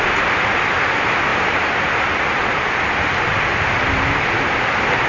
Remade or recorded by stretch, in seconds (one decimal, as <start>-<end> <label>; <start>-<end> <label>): 0.0-5.1 recorded